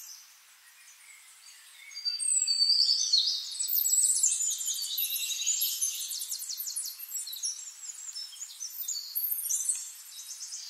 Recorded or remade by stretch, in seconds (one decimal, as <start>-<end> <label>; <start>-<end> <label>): 0.0-5.2 recorded; 5.2-6.0 remade; 6.0-8.2 recorded; 8.2-9.3 remade; 9.3-10.7 recorded